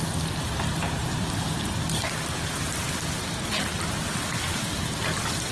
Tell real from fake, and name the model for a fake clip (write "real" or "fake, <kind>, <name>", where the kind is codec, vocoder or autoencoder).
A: real